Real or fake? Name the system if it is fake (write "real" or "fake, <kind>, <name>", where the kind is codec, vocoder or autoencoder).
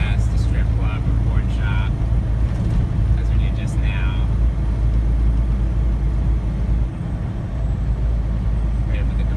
real